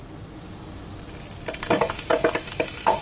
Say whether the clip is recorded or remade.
recorded